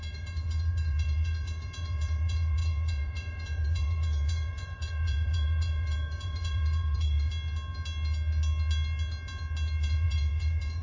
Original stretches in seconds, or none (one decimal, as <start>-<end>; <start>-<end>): 7.3-9.8